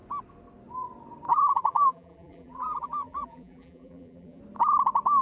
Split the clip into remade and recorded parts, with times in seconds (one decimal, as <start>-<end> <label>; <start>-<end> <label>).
0.0-1.3 recorded; 1.3-4.4 remade; 4.4-5.2 recorded